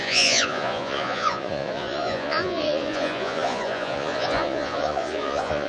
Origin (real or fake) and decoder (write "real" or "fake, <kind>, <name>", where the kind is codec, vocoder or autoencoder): fake, vocoder, Vocos